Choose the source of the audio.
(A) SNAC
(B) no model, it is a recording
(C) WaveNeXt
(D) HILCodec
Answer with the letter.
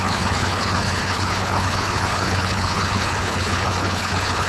D